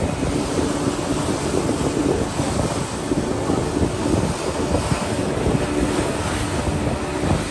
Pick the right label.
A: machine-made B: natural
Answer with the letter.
B